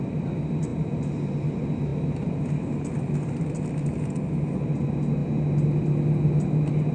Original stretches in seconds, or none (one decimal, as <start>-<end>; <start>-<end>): 0.0-6.9